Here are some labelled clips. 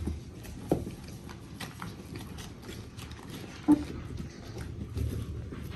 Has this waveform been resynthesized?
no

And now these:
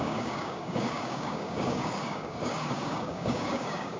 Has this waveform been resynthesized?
yes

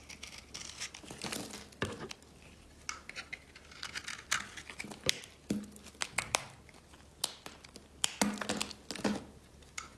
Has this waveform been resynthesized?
no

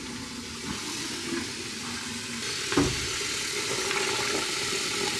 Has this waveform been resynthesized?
no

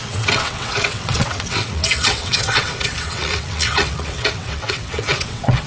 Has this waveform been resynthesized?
yes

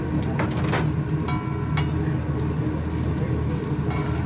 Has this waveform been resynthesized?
no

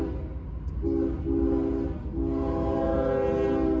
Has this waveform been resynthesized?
no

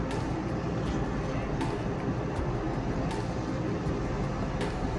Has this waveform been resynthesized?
no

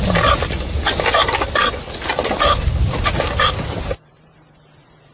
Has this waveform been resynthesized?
no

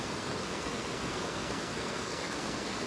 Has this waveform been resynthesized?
yes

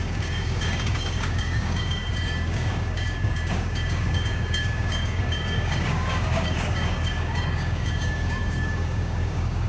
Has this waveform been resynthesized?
yes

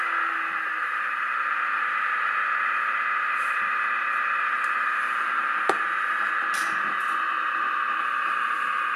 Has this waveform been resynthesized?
no